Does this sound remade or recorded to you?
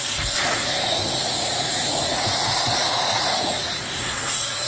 remade